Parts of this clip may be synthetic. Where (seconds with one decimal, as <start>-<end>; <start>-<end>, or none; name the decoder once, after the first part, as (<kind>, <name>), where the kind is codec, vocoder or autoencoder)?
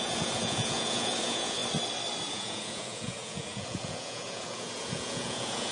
0.0-1.6 (vocoder, Vocos); 2.3-5.7